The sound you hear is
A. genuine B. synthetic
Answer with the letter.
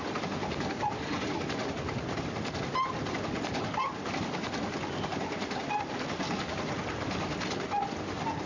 A